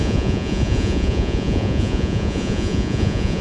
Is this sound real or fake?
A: fake